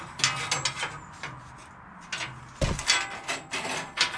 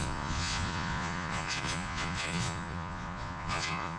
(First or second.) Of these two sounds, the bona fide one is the first